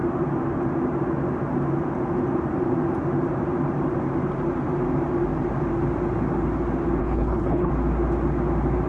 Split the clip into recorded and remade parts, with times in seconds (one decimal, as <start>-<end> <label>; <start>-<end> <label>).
0.0-7.0 recorded; 7.0-7.7 remade; 7.7-8.9 recorded